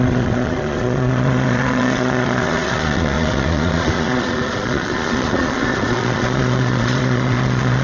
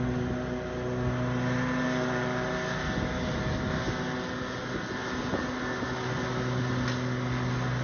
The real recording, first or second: second